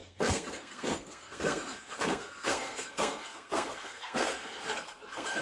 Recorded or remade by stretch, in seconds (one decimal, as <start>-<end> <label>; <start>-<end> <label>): 0.0-5.4 remade

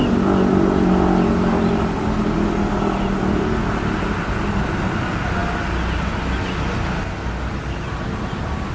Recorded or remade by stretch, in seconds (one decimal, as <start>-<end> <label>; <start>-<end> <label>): 0.0-8.7 recorded

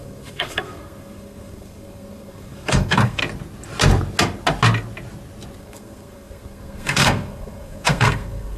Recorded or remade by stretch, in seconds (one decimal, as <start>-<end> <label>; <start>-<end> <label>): 0.0-3.2 remade; 3.2-5.6 recorded; 5.6-8.6 remade

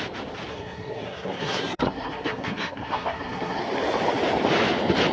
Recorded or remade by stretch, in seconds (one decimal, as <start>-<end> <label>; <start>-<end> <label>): 0.0-0.5 recorded; 0.5-3.6 remade; 3.6-5.1 recorded

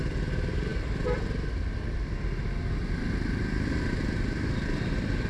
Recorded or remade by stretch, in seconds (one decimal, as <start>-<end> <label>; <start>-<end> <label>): 0.0-5.3 recorded